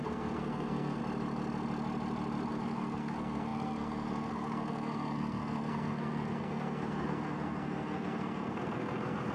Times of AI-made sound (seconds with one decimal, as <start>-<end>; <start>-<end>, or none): 0.0-1.0; 2.5-9.3